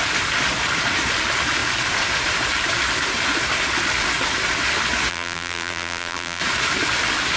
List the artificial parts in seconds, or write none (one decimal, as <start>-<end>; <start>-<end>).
5.1-6.4